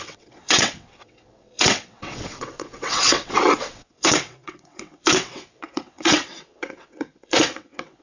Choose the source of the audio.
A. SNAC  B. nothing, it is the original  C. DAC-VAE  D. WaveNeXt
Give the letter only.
D